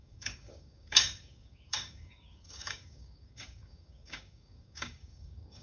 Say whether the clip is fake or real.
fake